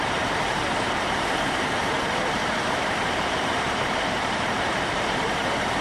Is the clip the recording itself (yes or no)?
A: no